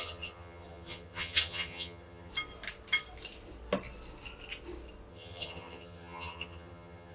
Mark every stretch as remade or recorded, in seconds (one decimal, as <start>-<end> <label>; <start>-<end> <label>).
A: 0.0-2.3 remade; 2.3-5.1 recorded; 5.1-7.1 remade